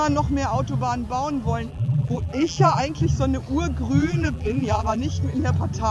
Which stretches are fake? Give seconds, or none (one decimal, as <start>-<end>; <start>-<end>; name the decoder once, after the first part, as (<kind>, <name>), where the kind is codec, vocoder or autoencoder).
1.7-2.8 (vocoder, BigVGAN v2); 4.0-5.0